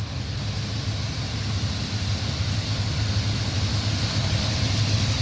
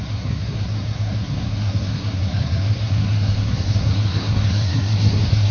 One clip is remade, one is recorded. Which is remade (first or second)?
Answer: second